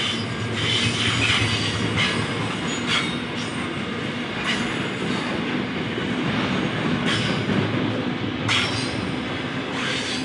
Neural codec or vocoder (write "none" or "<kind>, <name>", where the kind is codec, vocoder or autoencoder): none